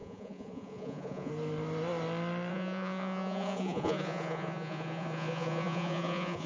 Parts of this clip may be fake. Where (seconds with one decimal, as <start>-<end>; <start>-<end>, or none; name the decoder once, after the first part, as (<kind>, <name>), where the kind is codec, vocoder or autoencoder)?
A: 0.0-1.3 (vocoder, Vocos); 2.5-6.5